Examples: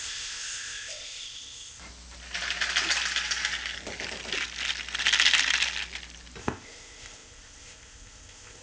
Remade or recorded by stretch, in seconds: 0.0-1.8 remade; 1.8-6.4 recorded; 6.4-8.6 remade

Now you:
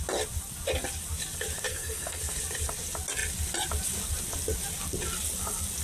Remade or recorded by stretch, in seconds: 0.0-1.7 recorded; 1.7-2.2 remade; 2.2-5.8 recorded

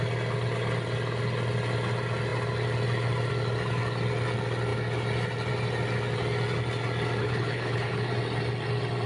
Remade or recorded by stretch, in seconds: 0.0-7.2 recorded; 7.2-8.1 remade; 8.1-9.1 recorded

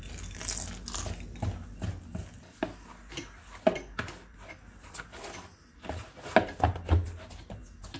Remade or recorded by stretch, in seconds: 0.0-8.0 recorded

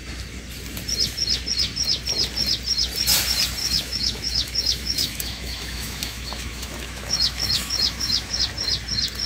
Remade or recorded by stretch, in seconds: 0.0-3.6 recorded; 3.6-8.4 remade; 8.4-9.3 recorded

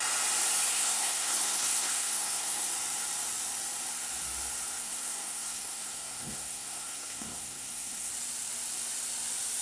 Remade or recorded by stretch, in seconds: 0.0-0.7 recorded; 0.7-2.7 remade; 2.7-4.8 recorded; 4.8-8.1 remade; 8.1-9.6 recorded